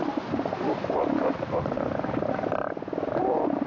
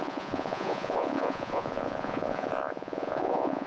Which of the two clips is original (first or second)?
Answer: first